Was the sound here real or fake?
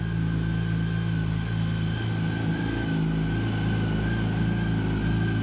real